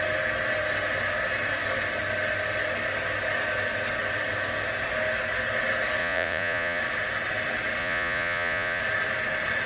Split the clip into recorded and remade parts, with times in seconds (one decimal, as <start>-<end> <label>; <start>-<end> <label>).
0.0-6.0 recorded; 6.0-6.8 remade; 6.8-7.8 recorded; 7.8-8.8 remade; 8.8-9.7 recorded